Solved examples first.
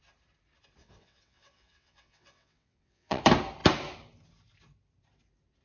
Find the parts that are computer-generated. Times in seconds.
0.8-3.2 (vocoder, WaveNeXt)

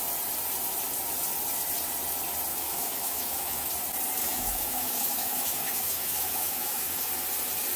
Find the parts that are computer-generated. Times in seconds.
2.5-3.7 (autoencoder, DAC-VAE); 4.2-7.1

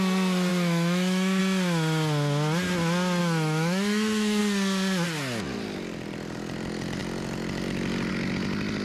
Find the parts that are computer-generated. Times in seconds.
0.5-1.4 (autoencoder, DAC-VAE); 3.2-4.4

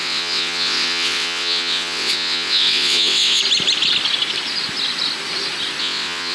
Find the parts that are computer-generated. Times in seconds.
0.0-3.4 (vocoder, WaveNeXt); 5.8-6.3

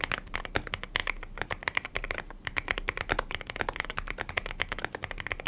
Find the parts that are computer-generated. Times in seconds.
none

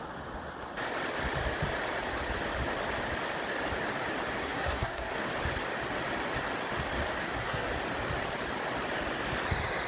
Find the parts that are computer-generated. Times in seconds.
4.4-5.1 (codec, SNAC); 7.2-7.7

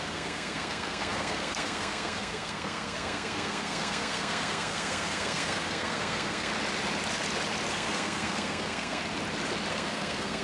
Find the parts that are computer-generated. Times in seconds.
0.0-6.5 (codec, SNAC); 7.7-9.0; 9.7-10.4